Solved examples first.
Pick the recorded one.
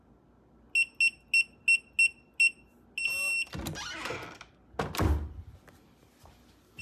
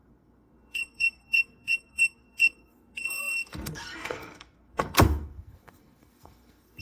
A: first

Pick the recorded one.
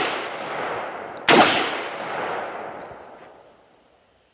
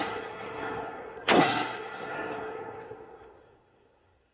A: first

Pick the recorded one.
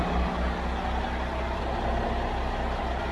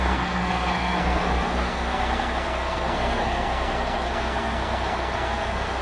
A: first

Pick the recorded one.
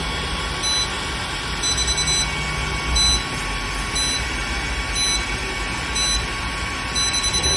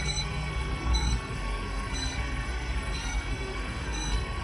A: first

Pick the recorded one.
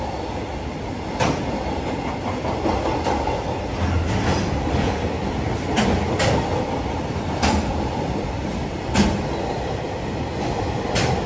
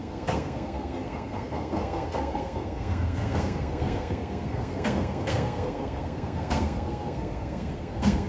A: first